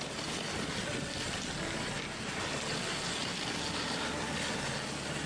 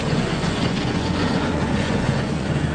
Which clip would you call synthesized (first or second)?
second